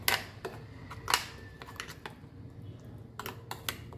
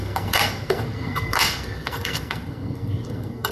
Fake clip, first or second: second